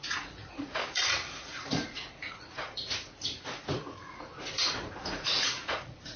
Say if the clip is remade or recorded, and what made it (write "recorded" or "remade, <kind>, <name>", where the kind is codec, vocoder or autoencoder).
remade, vocoder, Vocos